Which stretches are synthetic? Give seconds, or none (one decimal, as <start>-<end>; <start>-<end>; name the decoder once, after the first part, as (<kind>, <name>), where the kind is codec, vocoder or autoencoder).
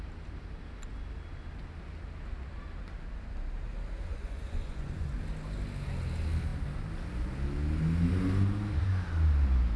4.1-5.2 (vocoder, Vocos)